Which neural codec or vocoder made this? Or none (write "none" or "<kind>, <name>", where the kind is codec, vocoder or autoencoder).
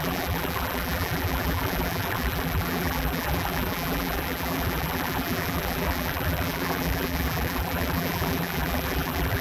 vocoder, BigVGAN v2